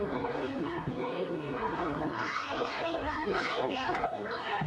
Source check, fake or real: fake